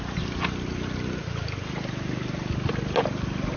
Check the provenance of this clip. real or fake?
real